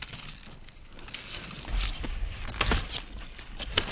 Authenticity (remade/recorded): recorded